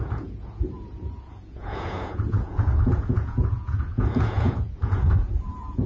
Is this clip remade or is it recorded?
remade